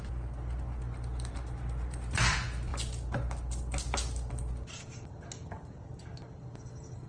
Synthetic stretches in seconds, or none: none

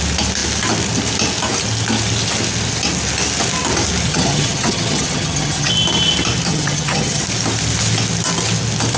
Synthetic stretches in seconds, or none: 4.1-5.7 (vocoder, HiFi-GAN); 6.5-7.2

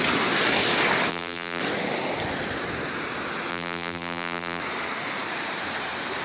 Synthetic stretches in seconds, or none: 1.1-1.6 (vocoder, BigVGAN v2); 3.5-4.6

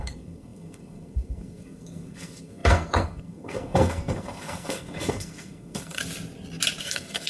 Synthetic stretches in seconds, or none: 0.0-6.0 (codec, SNAC); 6.8-7.3

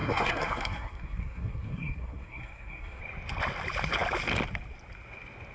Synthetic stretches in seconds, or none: 0.0-3.0 (codec, SNAC)